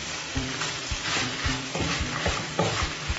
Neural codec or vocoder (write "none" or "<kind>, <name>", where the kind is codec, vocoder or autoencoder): vocoder, BigVGAN v2